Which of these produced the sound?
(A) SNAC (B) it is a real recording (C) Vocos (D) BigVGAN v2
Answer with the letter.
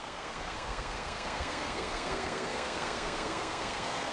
A